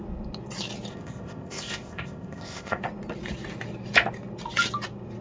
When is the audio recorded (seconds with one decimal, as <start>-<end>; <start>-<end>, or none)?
0.0-0.9; 2.8-5.2